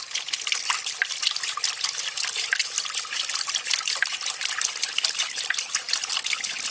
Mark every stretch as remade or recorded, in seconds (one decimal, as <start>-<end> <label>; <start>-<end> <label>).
0.0-6.7 recorded